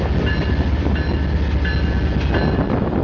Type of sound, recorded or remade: recorded